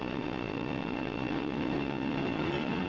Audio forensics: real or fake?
fake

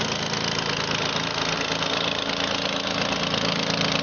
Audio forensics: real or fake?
real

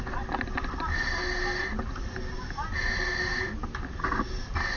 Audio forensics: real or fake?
real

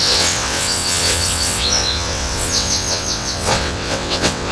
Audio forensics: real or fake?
fake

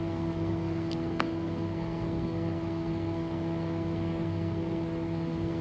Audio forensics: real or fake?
fake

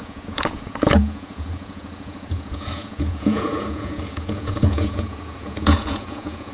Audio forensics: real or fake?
fake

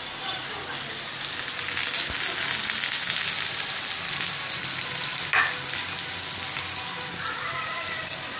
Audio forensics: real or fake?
real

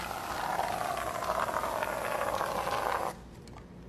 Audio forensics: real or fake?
real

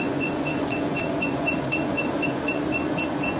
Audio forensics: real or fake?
fake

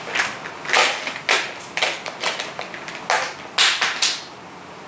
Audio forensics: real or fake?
real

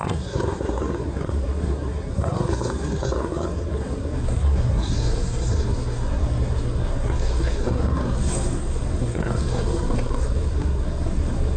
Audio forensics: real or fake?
fake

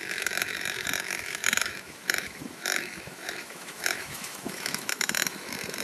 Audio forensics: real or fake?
fake